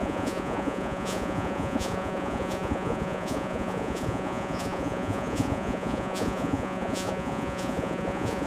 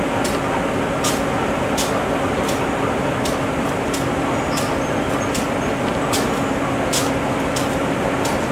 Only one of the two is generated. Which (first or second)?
first